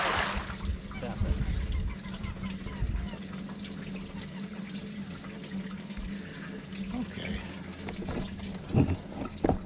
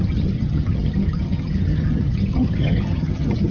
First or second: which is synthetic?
second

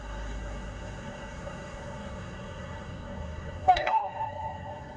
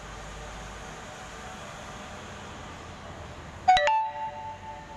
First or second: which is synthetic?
first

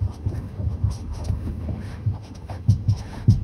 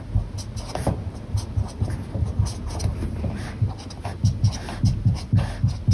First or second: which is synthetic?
first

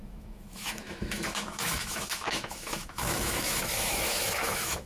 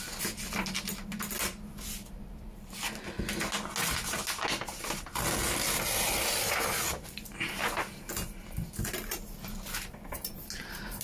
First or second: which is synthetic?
first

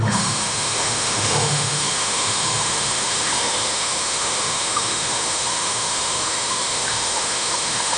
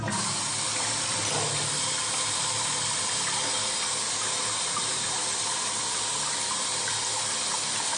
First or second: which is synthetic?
first